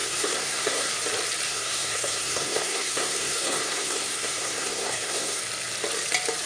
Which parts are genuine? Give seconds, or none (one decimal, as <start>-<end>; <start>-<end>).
0.9-1.5; 5.4-6.5